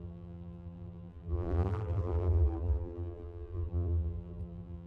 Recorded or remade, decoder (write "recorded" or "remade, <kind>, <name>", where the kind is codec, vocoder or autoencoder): remade, vocoder, BigVGAN v2